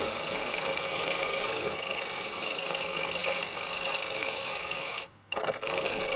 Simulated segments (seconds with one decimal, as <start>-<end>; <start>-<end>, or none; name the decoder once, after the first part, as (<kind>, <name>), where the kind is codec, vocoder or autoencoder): 0.0-6.2 (codec, SNAC)

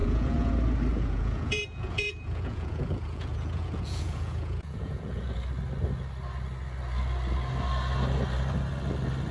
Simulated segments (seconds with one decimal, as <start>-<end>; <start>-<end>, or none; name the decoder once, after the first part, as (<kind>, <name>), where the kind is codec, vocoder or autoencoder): 0.0-0.5 (vocoder, Vocos); 0.9-5.3

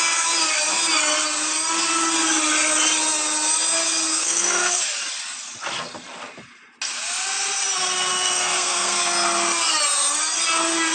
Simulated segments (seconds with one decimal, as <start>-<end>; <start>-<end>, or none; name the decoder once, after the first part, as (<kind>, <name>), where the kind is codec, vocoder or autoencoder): 4.1-4.8 (codec, SNAC); 8.1-9.0

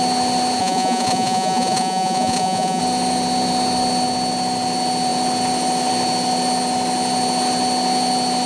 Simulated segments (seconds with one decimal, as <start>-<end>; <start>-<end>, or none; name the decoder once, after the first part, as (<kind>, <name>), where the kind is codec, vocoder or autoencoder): 0.6-2.8 (vocoder, Vocos)

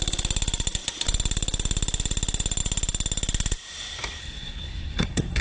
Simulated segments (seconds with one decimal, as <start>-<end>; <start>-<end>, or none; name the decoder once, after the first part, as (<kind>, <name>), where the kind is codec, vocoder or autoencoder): 4.2-5.4 (codec, SNAC)